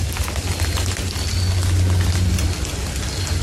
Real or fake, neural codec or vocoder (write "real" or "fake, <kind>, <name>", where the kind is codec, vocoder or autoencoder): real